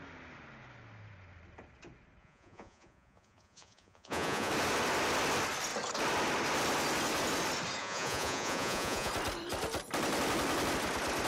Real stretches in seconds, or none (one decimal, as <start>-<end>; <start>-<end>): 0.0-2.2; 4.5-7.8; 9.1-11.3